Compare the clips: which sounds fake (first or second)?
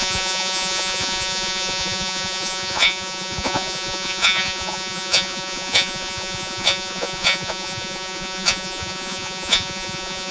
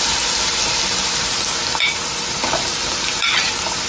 first